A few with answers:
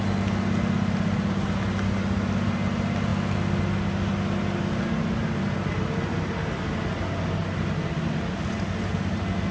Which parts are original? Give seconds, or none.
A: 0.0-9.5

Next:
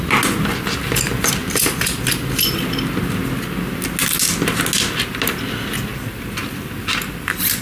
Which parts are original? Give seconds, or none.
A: 0.0-7.6

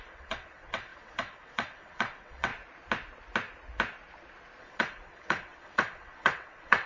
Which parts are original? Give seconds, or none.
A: 2.5-4.6

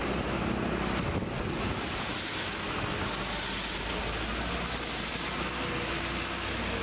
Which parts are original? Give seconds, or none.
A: 0.0-6.8

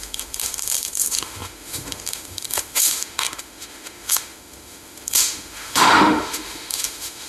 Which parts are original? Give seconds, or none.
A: none

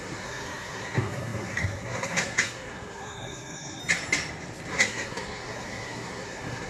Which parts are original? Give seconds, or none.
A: 3.8-4.7

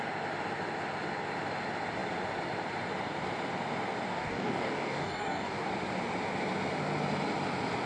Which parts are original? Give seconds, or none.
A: 0.0-4.1; 5.7-7.9

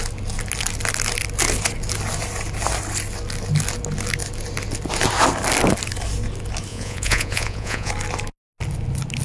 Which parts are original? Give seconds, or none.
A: 0.0-6.7; 7.9-9.2